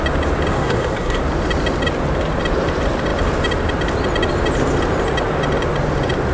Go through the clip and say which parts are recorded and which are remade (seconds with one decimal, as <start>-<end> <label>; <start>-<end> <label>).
0.0-0.5 recorded; 0.5-1.2 remade; 1.2-6.3 recorded